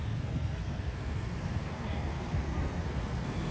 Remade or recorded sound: remade